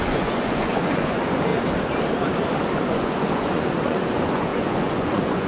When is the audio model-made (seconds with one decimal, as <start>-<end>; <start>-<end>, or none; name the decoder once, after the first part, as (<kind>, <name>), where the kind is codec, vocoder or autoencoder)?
0.0-1.5 (vocoder, Vocos); 2.8-5.5